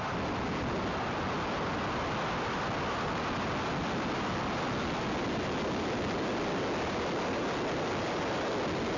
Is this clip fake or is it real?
real